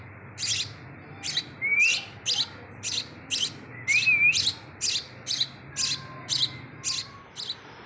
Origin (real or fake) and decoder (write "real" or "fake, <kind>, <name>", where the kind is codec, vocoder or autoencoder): real